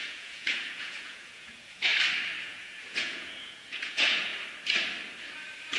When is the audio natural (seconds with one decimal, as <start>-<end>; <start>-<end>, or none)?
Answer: 1.9-2.4; 4.3-5.8